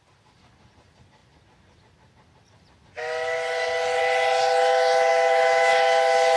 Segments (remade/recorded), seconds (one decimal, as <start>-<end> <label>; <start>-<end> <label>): 0.0-5.1 recorded; 5.1-5.7 remade; 5.7-6.4 recorded